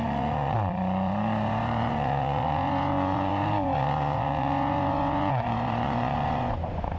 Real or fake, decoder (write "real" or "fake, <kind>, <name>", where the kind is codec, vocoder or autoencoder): fake, vocoder, Vocos